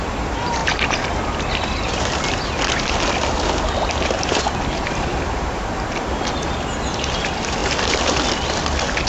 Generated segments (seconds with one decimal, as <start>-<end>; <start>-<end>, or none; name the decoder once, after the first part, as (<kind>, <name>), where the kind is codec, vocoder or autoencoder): none